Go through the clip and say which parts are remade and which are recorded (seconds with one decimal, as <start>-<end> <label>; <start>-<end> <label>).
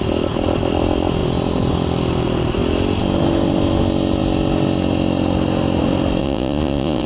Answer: 0.0-6.2 recorded; 6.2-7.1 remade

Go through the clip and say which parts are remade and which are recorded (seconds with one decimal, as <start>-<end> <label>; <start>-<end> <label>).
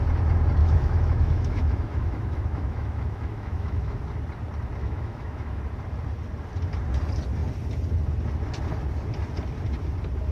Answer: 0.0-0.6 recorded; 0.6-4.0 remade; 4.0-4.8 recorded; 4.8-5.6 remade; 5.6-10.3 recorded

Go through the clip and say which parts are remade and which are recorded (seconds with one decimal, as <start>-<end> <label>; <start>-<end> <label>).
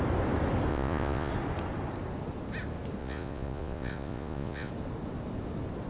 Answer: 0.0-0.7 recorded; 0.7-1.3 remade; 1.3-3.0 recorded; 3.0-4.7 remade; 4.7-5.9 recorded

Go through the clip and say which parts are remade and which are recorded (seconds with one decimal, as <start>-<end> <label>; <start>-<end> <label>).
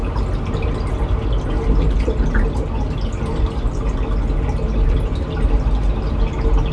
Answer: 0.0-6.7 recorded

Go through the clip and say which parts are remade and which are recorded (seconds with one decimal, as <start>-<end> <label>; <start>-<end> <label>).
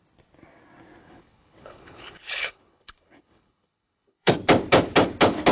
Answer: 0.0-1.0 recorded; 1.0-4.3 remade; 4.3-5.5 recorded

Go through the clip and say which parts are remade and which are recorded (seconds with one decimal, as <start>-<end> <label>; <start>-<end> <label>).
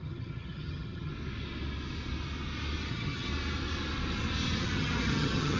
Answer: 0.0-1.1 remade; 1.1-2.9 recorded; 2.9-3.3 remade; 3.3-4.6 recorded; 4.6-5.6 remade